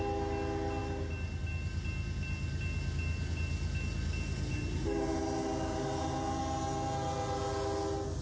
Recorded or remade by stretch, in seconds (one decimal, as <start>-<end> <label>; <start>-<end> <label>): 0.0-8.2 recorded